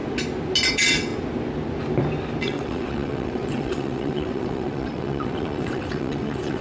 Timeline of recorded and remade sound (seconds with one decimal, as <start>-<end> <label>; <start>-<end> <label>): 0.0-0.7 recorded; 0.7-1.1 remade; 1.1-2.4 recorded; 2.4-6.6 remade